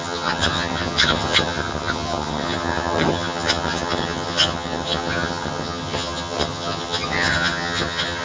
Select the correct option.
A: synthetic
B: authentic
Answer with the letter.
A